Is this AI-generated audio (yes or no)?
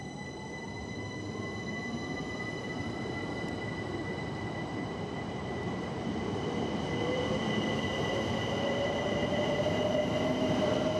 yes